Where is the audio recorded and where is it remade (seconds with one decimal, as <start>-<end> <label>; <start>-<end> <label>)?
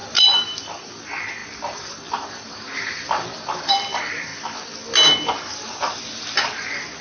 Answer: 0.0-4.3 remade; 4.3-5.3 recorded; 5.3-7.0 remade